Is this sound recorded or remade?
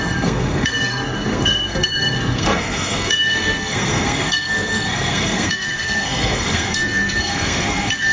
remade